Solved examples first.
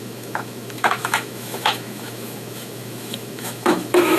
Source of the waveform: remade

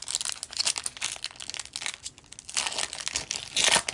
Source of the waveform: recorded